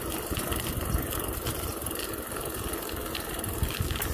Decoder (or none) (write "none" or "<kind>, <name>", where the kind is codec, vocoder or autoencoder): none